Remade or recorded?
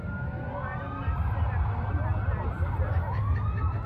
recorded